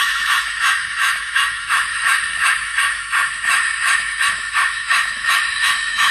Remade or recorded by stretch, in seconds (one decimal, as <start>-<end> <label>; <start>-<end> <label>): 0.0-6.1 remade